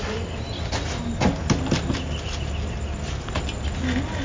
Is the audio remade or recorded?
recorded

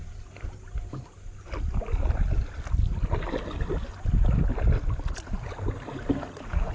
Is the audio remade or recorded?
recorded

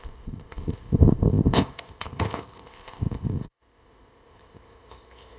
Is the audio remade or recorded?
remade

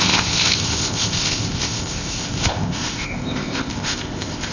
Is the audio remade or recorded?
remade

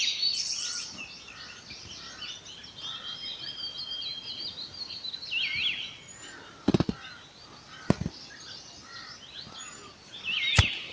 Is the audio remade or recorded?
recorded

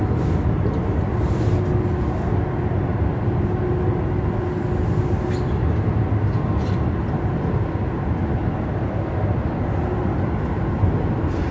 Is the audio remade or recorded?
recorded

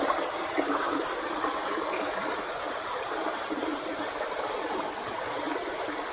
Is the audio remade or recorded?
recorded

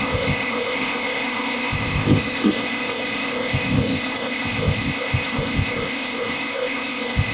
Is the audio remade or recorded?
remade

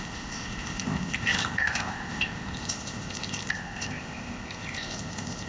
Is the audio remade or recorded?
remade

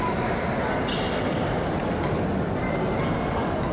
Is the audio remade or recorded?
recorded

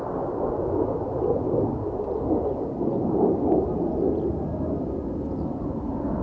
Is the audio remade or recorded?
recorded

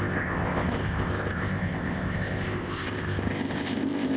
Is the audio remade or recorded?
remade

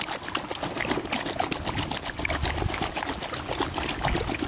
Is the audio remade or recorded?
recorded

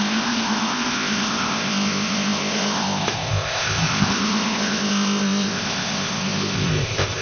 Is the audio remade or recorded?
remade